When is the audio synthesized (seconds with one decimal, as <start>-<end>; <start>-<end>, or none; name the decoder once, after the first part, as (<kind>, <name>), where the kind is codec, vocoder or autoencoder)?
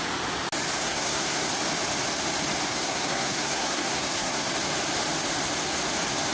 0.8-1.5 (codec, SNAC); 2.7-4.5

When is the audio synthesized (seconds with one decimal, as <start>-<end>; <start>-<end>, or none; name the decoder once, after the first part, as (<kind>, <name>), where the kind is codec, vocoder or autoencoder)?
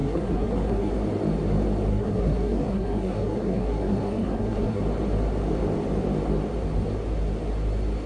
0.0-0.9 (codec, SNAC); 1.9-4.8